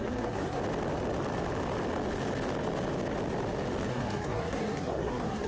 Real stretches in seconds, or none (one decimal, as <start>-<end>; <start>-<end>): 0.6-3.9